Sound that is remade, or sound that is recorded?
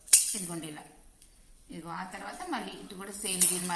remade